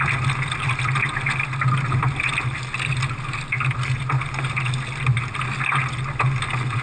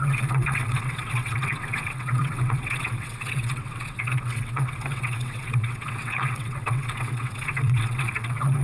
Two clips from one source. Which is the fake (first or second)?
second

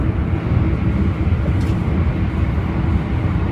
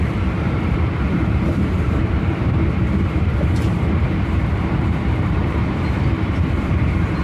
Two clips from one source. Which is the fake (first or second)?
second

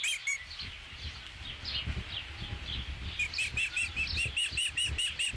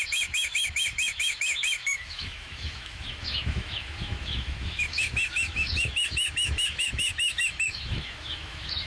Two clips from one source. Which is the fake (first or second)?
second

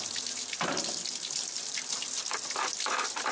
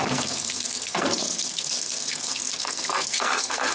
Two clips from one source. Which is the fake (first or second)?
second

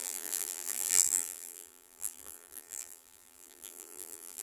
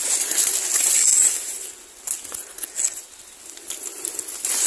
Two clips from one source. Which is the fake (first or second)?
first